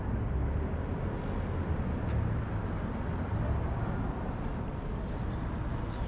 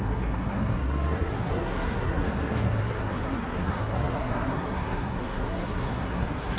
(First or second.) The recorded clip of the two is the first